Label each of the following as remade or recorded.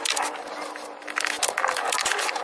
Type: recorded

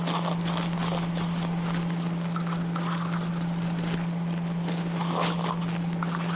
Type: recorded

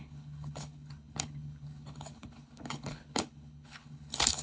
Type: remade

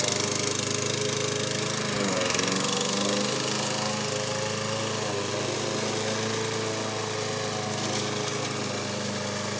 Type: recorded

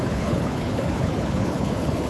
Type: remade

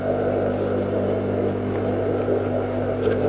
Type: recorded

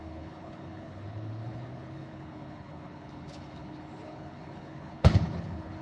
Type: remade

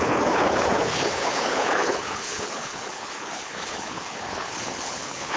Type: remade